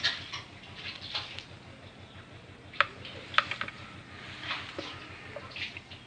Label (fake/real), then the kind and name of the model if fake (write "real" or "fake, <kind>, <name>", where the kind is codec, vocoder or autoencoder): real